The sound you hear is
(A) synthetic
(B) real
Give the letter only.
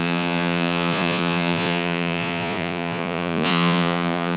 A